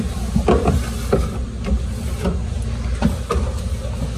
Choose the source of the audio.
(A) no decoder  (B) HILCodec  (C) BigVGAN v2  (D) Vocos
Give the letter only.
A